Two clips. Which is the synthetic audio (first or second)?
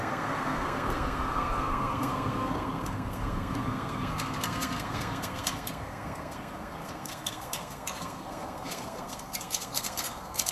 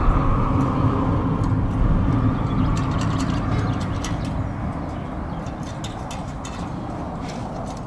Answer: first